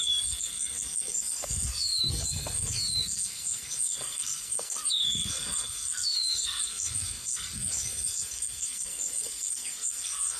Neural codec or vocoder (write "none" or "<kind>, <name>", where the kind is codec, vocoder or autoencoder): codec, SNAC